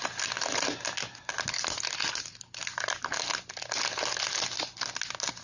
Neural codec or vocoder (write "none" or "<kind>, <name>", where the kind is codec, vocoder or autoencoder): none